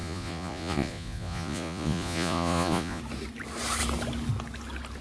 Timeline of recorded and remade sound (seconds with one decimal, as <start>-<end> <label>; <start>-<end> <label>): 0.0-3.0 remade; 3.0-5.0 recorded